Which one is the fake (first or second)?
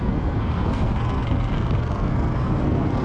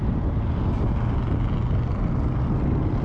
first